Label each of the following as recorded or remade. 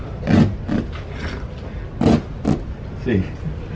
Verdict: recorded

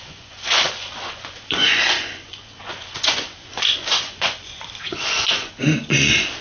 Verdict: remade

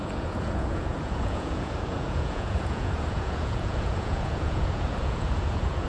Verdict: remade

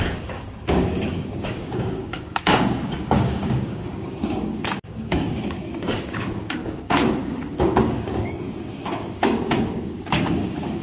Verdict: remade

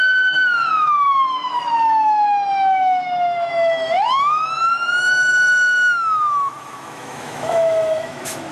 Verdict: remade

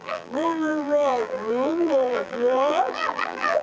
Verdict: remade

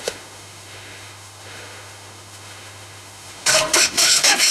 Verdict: remade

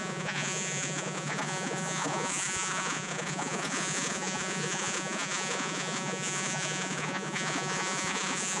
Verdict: remade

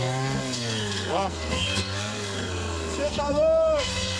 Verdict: remade